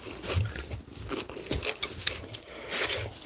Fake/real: real